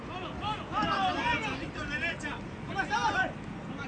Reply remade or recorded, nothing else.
recorded